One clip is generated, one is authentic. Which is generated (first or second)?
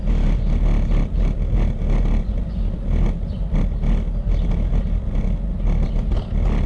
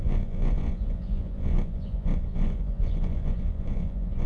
second